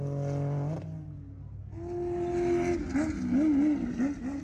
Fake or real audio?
real